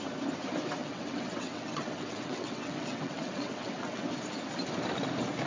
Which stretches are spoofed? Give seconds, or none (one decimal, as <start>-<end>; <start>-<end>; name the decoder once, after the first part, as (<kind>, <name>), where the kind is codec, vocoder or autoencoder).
0.8-4.1 (vocoder, WaveNeXt)